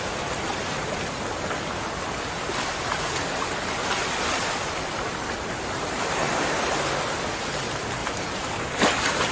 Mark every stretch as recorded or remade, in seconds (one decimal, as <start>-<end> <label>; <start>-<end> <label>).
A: 0.0-2.9 recorded; 2.9-3.9 remade; 3.9-8.0 recorded; 8.0-8.9 remade; 8.9-9.3 recorded